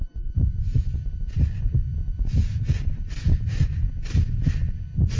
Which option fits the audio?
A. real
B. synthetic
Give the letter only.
A